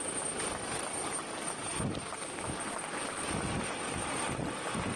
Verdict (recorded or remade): recorded